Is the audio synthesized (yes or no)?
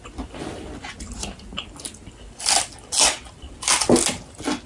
no